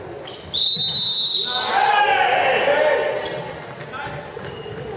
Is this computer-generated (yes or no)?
no